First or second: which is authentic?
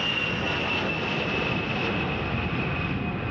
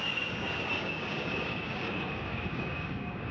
first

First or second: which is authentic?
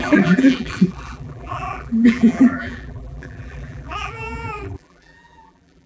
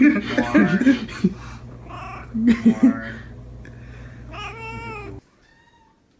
second